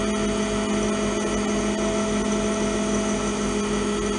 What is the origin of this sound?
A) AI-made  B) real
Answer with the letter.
B